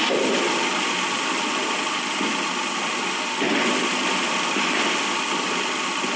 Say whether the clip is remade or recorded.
recorded